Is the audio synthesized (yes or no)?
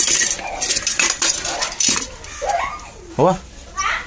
no